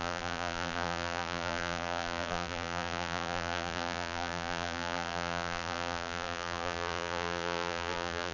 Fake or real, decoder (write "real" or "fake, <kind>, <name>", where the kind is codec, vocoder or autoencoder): fake, vocoder, BigVGAN v2